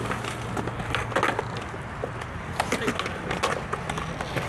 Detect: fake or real real